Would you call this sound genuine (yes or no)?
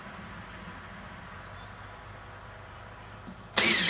yes